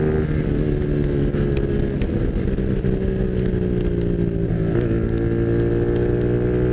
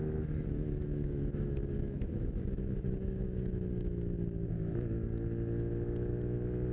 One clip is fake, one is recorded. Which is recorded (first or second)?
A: first